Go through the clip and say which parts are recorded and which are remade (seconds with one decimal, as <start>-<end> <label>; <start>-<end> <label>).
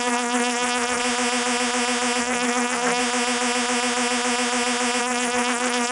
0.0-1.0 remade; 1.0-2.2 recorded; 2.2-3.0 remade; 3.0-5.0 recorded; 5.0-5.9 remade